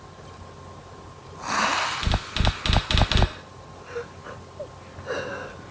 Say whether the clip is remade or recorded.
recorded